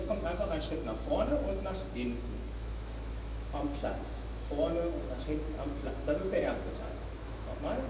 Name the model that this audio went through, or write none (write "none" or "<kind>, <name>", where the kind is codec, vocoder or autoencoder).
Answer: autoencoder, DAC-VAE